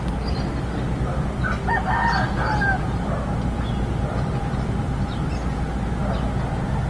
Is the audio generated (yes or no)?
no